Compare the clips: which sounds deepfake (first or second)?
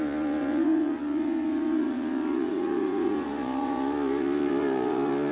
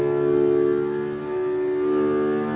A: first